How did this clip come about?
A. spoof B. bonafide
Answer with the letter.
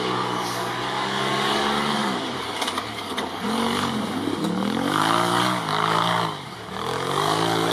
A